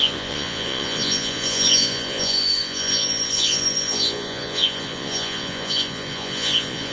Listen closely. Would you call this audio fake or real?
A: fake